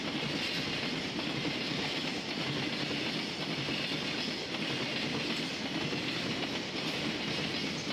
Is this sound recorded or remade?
recorded